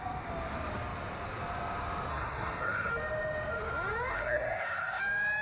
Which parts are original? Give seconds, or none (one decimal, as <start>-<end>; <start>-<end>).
0.0-2.1; 2.9-4.1; 5.0-5.4